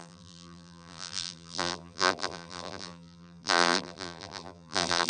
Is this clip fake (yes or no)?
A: yes